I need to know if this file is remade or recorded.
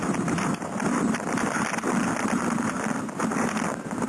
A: remade